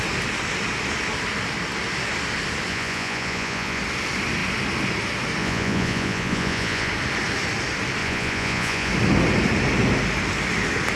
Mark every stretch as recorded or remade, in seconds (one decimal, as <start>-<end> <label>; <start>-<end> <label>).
0.0-2.7 recorded; 2.7-3.8 remade; 3.8-5.4 recorded; 5.4-6.9 remade; 6.9-8.0 recorded; 8.0-8.9 remade; 8.9-11.0 recorded